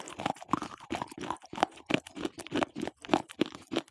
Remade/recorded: recorded